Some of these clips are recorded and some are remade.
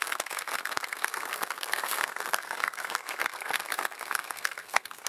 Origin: remade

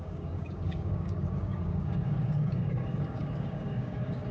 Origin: remade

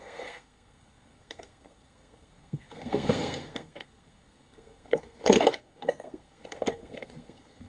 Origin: remade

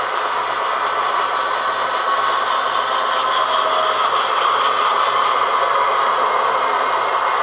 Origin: recorded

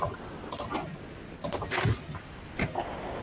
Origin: recorded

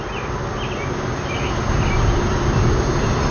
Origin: recorded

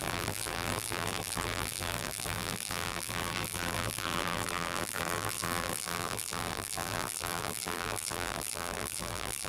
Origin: remade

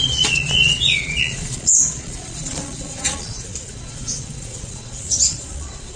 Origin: remade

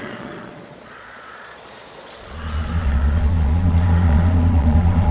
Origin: remade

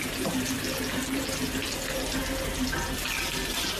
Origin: recorded